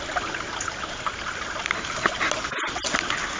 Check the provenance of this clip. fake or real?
real